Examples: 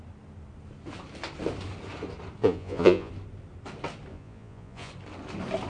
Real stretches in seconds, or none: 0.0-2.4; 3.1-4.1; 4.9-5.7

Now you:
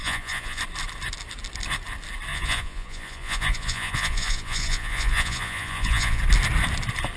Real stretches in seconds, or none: 0.6-2.3; 6.2-7.2

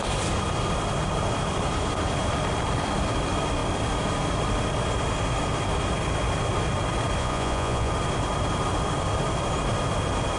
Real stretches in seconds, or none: 0.0-7.2; 7.9-10.4

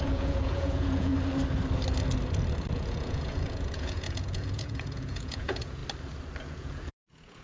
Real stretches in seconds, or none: 1.1-2.7; 5.8-6.5

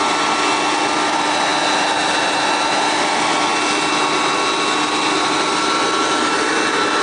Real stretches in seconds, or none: 0.0-7.0